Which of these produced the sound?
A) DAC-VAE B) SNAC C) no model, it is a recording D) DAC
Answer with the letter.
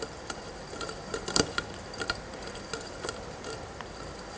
C